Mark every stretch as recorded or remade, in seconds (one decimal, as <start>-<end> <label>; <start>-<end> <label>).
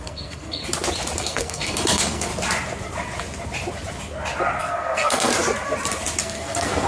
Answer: 0.0-0.6 remade; 0.6-1.2 recorded; 1.2-2.3 remade; 2.3-4.6 recorded; 4.6-5.3 remade; 5.3-6.2 recorded; 6.2-6.9 remade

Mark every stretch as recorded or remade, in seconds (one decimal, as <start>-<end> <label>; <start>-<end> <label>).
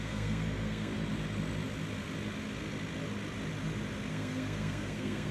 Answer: 0.0-0.9 remade; 0.9-4.1 recorded; 4.1-5.3 remade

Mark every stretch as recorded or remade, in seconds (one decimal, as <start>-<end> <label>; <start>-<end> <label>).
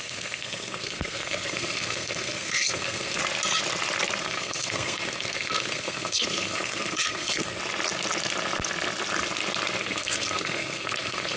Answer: 0.0-3.2 remade; 3.2-4.2 recorded; 4.2-7.6 remade; 7.6-9.8 recorded; 9.8-11.4 remade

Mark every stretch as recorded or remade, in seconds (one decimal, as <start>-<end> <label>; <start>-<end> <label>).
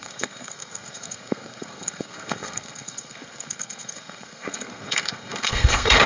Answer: 0.0-6.1 remade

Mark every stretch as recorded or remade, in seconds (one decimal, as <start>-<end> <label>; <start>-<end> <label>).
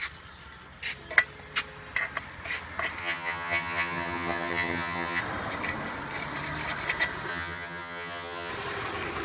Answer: 0.0-3.0 recorded; 3.0-5.2 remade; 5.2-7.3 recorded; 7.3-8.5 remade; 8.5-9.2 recorded